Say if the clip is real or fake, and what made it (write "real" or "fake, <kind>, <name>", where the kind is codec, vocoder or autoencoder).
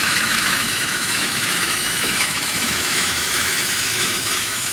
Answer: fake, autoencoder, DAC-VAE